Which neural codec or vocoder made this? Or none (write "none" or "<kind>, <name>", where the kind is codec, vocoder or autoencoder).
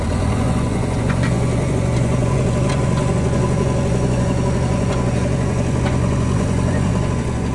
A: vocoder, Vocos